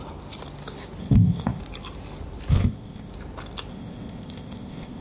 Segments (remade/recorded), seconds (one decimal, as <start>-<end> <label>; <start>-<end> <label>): 0.0-1.0 recorded; 1.0-1.6 remade; 1.6-2.5 recorded; 2.5-3.1 remade; 3.1-3.7 recorded; 3.7-5.0 remade